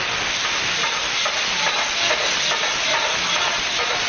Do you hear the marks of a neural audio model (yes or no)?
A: no